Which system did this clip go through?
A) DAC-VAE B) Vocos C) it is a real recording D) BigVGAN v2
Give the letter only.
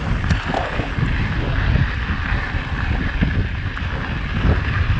C